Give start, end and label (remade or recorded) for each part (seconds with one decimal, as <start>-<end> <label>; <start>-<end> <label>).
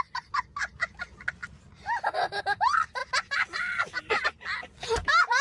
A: 0.0-5.4 recorded